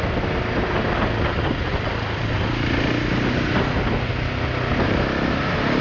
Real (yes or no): yes